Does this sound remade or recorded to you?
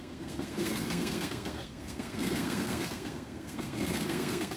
remade